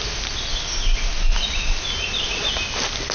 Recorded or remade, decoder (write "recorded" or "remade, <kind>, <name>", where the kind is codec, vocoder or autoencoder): recorded